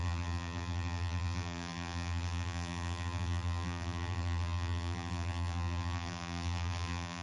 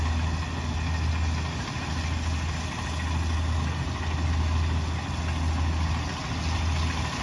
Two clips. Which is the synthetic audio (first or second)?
first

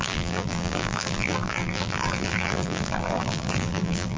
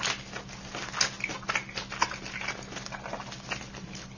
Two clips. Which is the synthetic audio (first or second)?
first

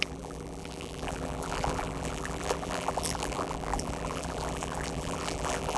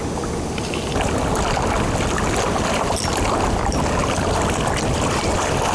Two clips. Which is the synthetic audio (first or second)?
first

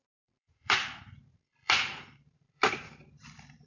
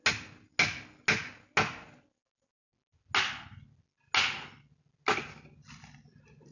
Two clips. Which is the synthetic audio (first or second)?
first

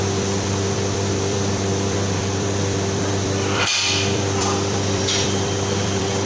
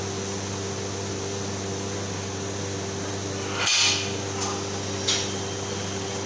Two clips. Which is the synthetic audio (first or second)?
first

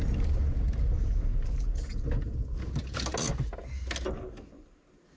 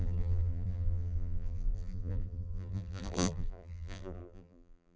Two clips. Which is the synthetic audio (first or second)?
second